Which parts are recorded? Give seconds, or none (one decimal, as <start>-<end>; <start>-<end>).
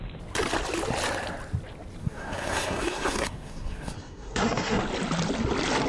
0.0-2.0; 4.8-5.9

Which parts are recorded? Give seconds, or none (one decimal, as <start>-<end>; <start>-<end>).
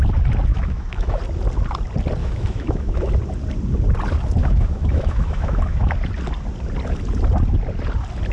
0.0-0.5; 1.2-2.2; 3.1-4.4; 5.9-8.3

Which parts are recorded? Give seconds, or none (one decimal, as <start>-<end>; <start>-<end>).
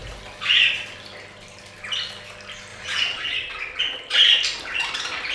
0.0-2.7; 3.8-5.3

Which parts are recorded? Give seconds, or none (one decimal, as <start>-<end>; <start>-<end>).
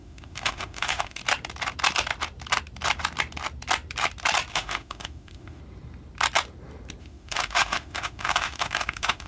1.2-4.5; 5.6-7.0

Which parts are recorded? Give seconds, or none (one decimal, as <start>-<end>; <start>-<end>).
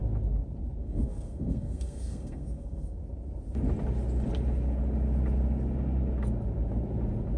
0.0-0.8; 3.0-7.4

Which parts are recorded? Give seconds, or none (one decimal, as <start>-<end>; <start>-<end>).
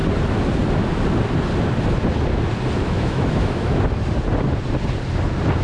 0.0-2.8; 3.8-5.6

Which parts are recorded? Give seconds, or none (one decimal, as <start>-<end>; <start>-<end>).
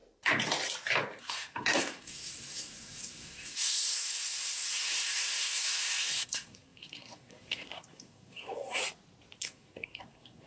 0.0-1.2; 8.8-9.4